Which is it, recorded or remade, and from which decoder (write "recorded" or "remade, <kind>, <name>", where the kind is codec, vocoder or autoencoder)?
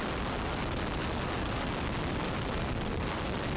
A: recorded